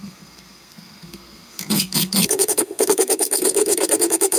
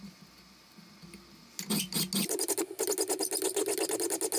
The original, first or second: second